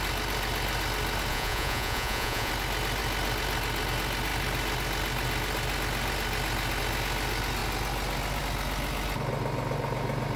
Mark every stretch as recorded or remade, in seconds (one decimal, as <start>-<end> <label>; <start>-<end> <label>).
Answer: 0.0-1.3 recorded; 1.3-2.5 remade; 2.5-10.4 recorded